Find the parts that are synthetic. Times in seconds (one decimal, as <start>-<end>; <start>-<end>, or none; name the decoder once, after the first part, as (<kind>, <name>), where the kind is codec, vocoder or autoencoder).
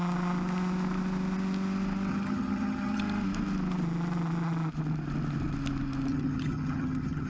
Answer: 2.1-3.0 (vocoder, HiFi-GAN); 6.1-7.3